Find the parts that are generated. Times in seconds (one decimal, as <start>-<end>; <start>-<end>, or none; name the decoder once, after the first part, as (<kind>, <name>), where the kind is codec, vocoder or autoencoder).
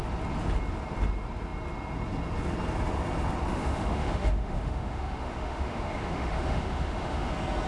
3.5-7.3 (autoencoder, DAC-VAE)